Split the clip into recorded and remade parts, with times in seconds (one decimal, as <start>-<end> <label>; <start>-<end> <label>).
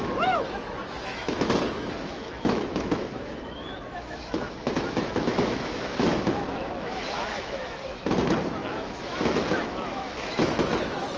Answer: 0.0-11.2 remade